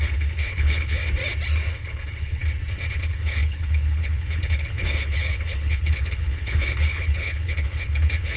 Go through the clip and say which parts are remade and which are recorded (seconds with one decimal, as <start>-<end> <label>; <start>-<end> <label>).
0.0-1.0 remade; 1.0-1.7 recorded; 1.7-2.4 remade; 2.4-2.9 recorded; 2.9-8.4 remade